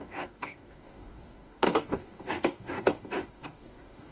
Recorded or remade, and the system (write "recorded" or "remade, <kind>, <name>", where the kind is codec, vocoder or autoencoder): remade, codec, DAC